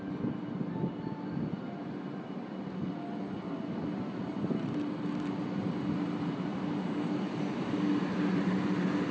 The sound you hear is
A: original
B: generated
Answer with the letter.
A